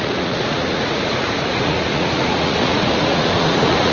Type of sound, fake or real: fake